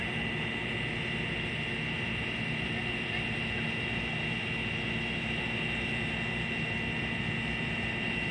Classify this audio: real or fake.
real